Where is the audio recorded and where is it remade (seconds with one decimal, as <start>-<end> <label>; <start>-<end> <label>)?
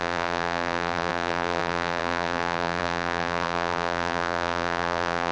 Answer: 0.0-5.3 remade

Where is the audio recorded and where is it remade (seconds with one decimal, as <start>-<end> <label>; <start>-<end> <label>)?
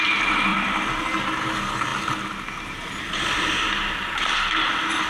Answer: 0.0-0.5 recorded; 0.5-1.4 remade; 1.4-5.1 recorded